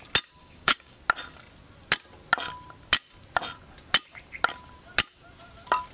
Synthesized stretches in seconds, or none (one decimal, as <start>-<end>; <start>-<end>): 0.4-1.0